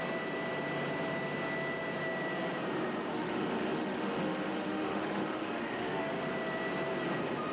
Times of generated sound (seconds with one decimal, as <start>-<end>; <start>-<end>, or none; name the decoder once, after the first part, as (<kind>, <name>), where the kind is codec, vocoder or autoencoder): 3.1-6.1 (autoencoder, DAC-VAE)